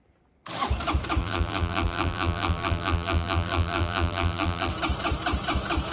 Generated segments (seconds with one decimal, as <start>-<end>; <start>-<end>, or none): 1.2-4.7